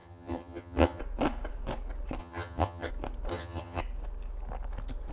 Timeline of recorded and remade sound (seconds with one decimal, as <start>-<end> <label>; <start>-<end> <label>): 0.0-1.0 remade; 1.0-2.2 recorded; 2.2-2.9 remade; 2.9-3.3 recorded; 3.3-3.8 remade; 3.8-5.1 recorded